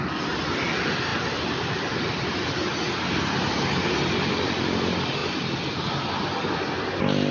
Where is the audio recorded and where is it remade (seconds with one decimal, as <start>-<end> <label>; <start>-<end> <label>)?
0.0-7.3 recorded